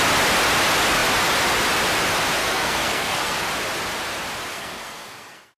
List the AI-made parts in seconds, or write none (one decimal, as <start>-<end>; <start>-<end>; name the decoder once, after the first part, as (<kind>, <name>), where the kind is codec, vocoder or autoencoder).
2.4-3.5 (codec, SNAC); 4.5-5.6